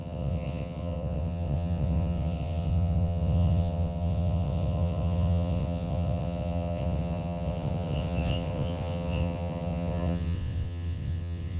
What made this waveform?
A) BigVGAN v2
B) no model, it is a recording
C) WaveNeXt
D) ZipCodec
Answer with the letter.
C